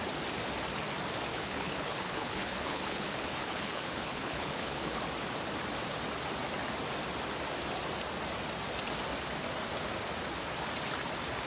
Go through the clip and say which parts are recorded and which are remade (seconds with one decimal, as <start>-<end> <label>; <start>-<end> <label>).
0.0-1.3 recorded; 1.3-5.0 remade; 5.0-11.5 recorded